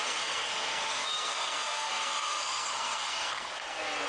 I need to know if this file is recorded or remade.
remade